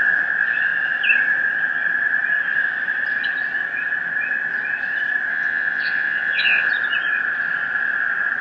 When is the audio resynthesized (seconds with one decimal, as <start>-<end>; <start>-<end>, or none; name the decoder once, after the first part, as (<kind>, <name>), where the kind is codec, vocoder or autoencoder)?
5.3-6.7 (vocoder, Vocos)